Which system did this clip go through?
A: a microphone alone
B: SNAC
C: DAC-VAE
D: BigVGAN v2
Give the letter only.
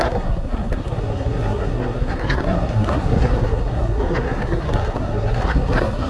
B